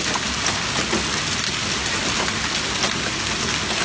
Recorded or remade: recorded